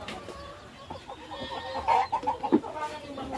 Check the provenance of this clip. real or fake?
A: real